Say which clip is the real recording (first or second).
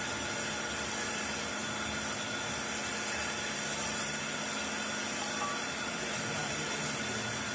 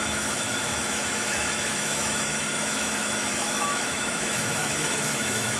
first